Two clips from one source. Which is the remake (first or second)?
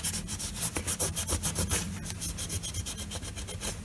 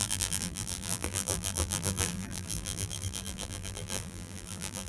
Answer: second